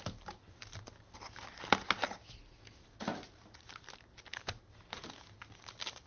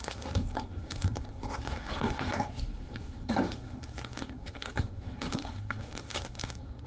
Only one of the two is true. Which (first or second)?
first